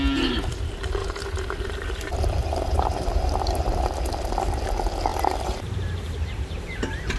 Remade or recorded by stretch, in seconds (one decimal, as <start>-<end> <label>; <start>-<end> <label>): 0.0-1.0 recorded; 1.0-3.8 remade; 3.8-5.1 recorded; 5.1-7.2 remade